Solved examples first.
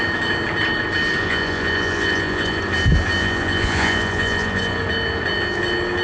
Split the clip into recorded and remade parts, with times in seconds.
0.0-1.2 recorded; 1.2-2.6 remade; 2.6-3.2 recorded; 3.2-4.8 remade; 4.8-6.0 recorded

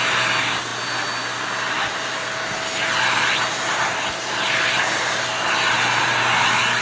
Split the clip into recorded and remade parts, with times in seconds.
0.0-6.8 recorded

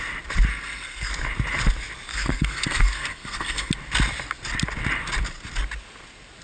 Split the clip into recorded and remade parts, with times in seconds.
0.0-0.5 recorded; 0.5-1.1 remade; 1.1-2.1 recorded; 2.1-3.7 remade; 3.7-6.4 recorded

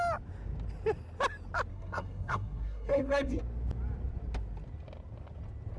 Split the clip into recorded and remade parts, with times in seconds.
0.0-1.7 recorded; 1.7-3.4 remade; 3.4-5.8 recorded

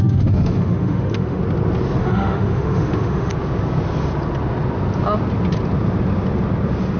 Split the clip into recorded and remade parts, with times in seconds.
0.0-1.4 remade; 1.4-2.0 recorded; 2.0-3.3 remade; 3.3-7.0 recorded

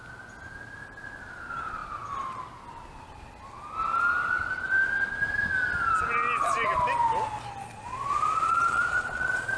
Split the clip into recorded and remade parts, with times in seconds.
0.0-7.6 recorded; 7.6-9.6 remade

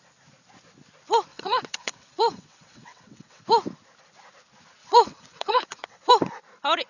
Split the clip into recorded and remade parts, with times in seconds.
0.0-1.3 recorded; 1.3-3.4 remade; 3.4-4.8 recorded; 4.8-6.1 remade; 6.1-6.9 recorded

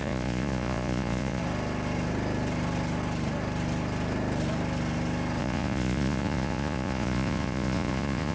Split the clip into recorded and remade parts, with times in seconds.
0.0-1.4 remade; 1.4-5.4 recorded; 5.4-8.3 remade